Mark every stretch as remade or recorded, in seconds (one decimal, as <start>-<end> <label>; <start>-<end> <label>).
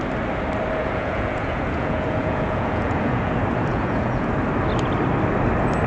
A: 0.0-0.8 recorded; 0.8-3.3 remade; 3.3-3.7 recorded; 3.7-4.3 remade; 4.3-5.9 recorded